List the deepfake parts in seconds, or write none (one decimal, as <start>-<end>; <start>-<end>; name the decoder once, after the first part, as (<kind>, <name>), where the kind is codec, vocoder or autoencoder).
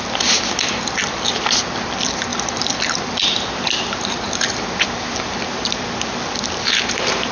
none